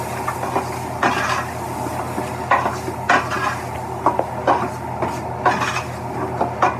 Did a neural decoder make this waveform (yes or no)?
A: no